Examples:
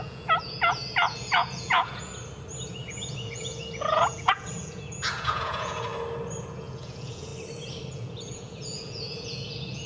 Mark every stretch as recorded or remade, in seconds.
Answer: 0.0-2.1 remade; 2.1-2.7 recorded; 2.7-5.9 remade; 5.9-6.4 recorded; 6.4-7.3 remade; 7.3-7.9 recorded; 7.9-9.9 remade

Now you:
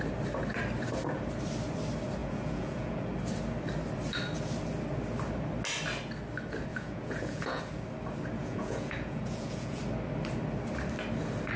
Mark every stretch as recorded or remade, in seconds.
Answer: 0.0-2.2 recorded; 2.2-3.0 remade; 3.0-6.7 recorded; 6.7-7.6 remade; 7.6-8.4 recorded; 8.4-9.8 remade; 9.8-11.6 recorded

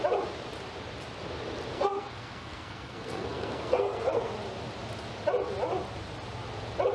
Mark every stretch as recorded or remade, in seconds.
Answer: 0.0-1.7 recorded; 1.7-4.3 remade; 4.3-6.9 recorded

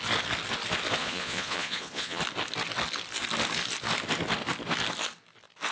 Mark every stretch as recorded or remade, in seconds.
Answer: 0.0-1.0 recorded; 1.0-2.2 remade; 2.2-5.7 recorded

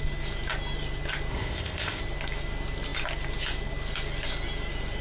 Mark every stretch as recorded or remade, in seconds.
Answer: 0.0-1.3 recorded; 1.3-2.0 remade; 2.0-5.0 recorded